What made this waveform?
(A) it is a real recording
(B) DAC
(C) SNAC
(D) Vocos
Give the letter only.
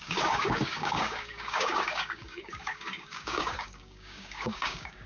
B